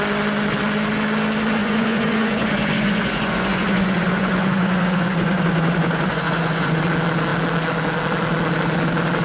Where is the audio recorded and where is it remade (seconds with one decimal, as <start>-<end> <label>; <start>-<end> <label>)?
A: 0.0-1.6 recorded; 1.6-6.8 remade; 6.8-9.2 recorded